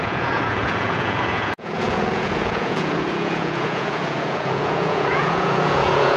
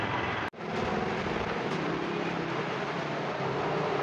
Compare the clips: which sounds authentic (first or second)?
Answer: second